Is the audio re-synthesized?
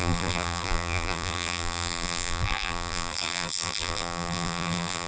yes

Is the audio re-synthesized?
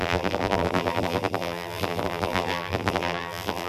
yes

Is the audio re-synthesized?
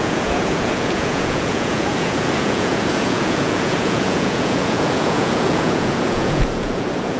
yes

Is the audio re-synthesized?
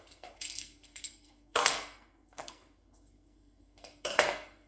yes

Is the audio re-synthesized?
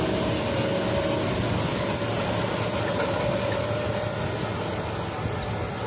no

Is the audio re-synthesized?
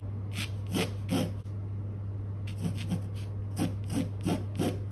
no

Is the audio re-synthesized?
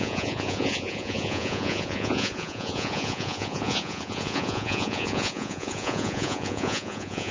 yes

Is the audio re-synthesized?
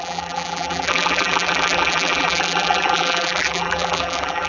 yes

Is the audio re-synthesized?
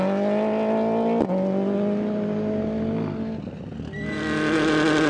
no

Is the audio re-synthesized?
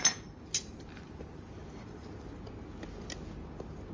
no